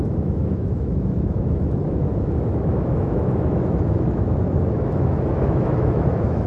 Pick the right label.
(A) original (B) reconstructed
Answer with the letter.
B